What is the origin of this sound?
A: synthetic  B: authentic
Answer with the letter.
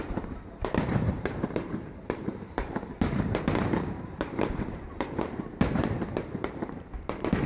A